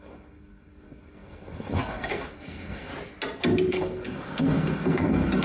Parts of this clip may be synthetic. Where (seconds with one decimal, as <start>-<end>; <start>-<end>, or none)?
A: 0.0-2.9; 3.7-5.4